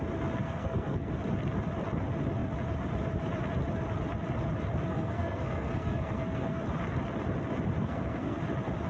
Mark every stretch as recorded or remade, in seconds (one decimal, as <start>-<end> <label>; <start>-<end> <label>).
0.0-0.4 recorded; 0.4-1.1 remade; 1.1-4.9 recorded; 4.9-6.6 remade; 6.6-7.8 recorded; 7.8-8.4 remade; 8.4-8.9 recorded

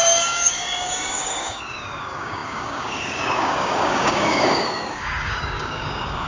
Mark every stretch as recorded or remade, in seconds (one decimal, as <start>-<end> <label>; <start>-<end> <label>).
0.0-6.3 remade

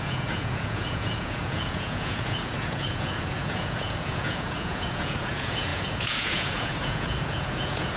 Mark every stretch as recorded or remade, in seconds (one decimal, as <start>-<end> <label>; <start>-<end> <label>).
0.0-8.0 remade

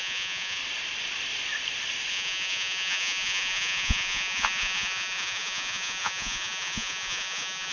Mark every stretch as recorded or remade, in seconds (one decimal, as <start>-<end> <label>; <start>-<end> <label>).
0.0-0.6 remade; 0.6-2.1 recorded; 2.1-7.7 remade

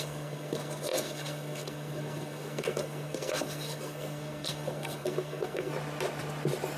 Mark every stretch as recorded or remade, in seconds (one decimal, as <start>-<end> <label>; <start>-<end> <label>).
0.0-5.7 remade; 5.7-6.8 recorded

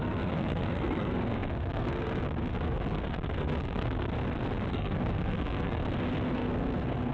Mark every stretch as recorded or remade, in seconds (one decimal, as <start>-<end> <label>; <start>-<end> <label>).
0.0-4.1 remade; 4.1-4.7 recorded; 4.7-5.8 remade; 5.8-6.3 recorded; 6.3-7.1 remade

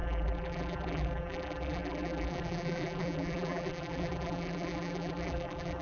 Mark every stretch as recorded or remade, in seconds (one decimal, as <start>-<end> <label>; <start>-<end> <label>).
0.0-5.8 remade